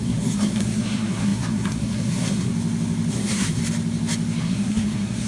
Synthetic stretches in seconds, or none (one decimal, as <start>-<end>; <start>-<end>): 0.0-2.5; 3.1-3.6; 4.4-5.3